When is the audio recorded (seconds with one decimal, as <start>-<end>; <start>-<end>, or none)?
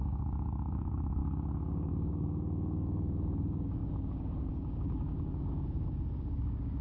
none